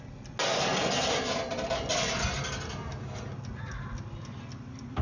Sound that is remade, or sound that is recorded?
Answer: recorded